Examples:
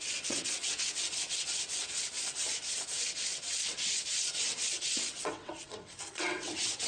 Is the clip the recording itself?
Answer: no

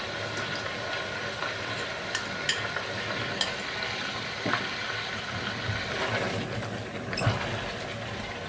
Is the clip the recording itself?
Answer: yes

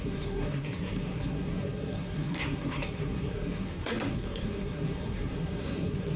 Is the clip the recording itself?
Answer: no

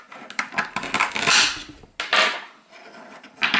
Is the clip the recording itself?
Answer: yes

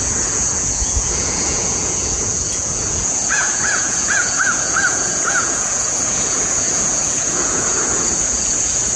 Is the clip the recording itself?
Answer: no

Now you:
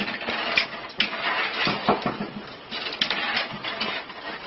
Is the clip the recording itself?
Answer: yes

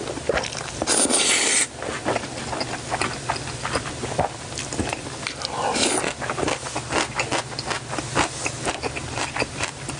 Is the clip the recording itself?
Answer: yes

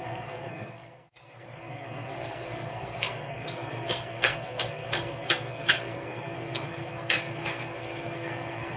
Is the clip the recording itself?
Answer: no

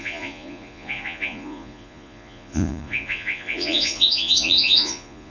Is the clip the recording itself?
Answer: no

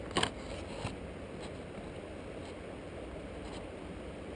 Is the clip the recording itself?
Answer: yes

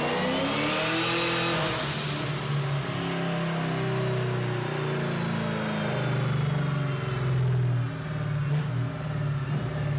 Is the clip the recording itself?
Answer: yes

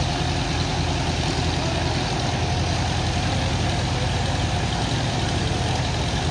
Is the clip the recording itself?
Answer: yes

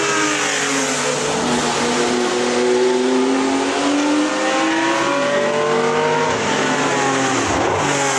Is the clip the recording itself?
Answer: yes